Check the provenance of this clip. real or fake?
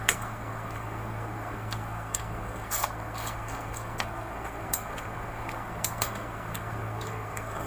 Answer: fake